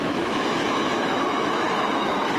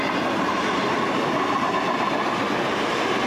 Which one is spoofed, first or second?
first